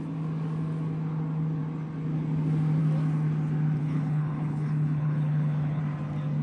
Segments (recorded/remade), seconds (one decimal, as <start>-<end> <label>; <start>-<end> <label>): 0.0-3.8 recorded; 3.8-5.8 remade; 5.8-6.4 recorded